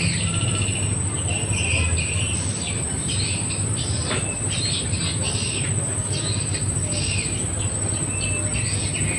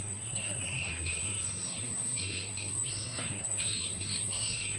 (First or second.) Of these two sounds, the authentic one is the first